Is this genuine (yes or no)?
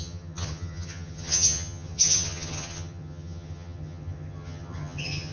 no